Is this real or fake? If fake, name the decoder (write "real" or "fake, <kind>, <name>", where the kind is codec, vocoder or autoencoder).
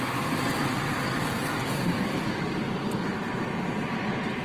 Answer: real